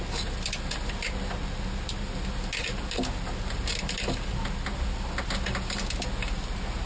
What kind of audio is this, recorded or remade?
recorded